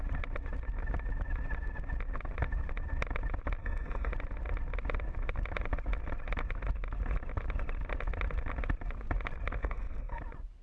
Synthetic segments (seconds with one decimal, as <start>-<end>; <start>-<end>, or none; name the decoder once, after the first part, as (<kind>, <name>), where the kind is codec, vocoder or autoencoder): 3.6-4.1 (codec, SNAC); 9.6-10.2